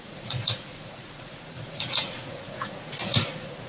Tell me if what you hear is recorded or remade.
remade